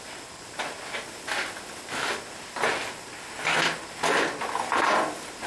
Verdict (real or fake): real